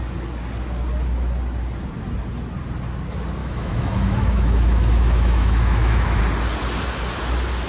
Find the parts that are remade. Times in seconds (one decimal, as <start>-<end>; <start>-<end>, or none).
3.4-6.2